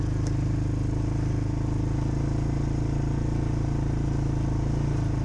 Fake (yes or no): no